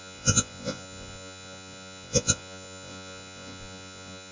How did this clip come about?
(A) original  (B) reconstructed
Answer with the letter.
B